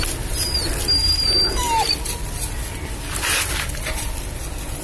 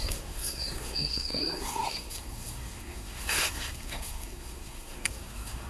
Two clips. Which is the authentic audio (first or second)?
first